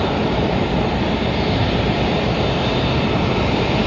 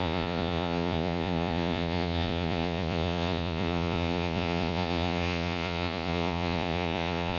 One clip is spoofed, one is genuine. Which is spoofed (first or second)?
second